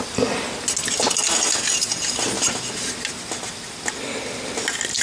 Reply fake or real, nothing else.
real